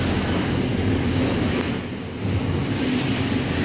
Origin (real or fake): real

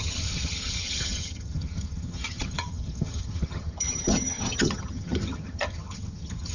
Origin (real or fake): fake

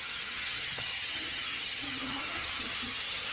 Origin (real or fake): fake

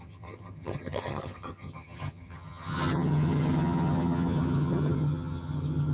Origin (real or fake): fake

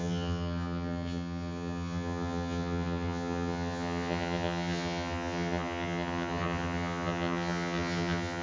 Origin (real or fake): fake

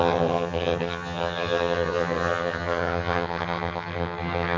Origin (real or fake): fake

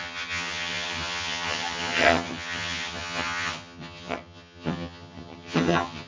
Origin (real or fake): fake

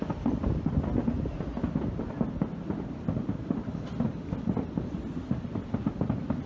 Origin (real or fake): real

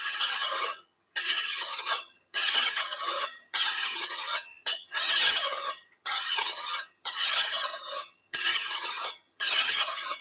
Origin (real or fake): fake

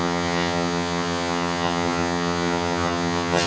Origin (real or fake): fake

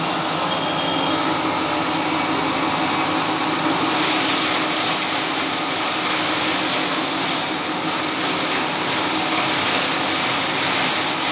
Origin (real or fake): real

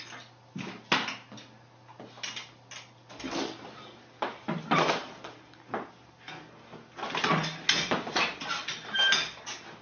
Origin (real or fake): real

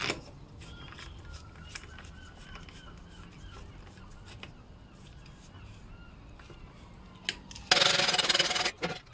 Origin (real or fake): real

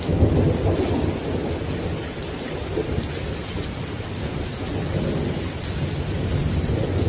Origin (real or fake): real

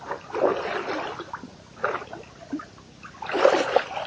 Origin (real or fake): real